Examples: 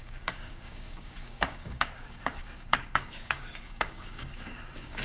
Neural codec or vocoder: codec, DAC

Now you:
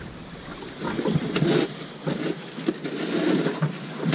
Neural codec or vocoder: none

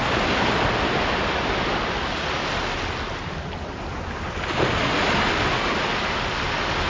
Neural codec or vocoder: none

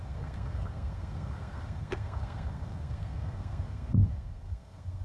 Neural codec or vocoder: codec, SNAC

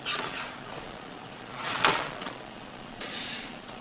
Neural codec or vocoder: vocoder, Vocos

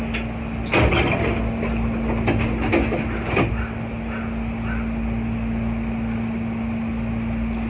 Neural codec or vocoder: none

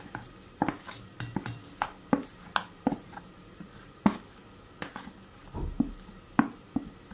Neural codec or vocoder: none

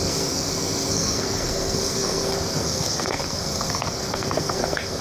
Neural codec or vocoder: codec, SNAC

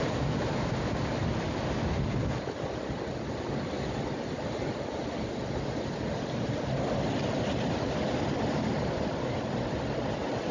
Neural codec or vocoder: none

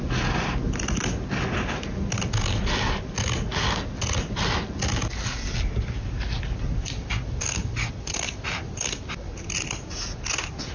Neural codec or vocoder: none